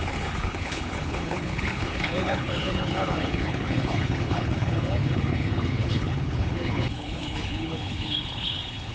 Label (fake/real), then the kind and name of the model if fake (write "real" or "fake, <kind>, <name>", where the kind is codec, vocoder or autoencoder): fake, codec, HILCodec